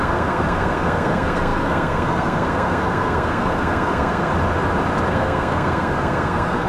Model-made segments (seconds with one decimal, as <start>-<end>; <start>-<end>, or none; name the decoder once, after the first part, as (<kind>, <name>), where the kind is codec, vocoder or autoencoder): 0.0-4.3 (codec, SNAC); 5.1-6.7